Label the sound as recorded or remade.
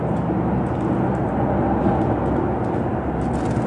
recorded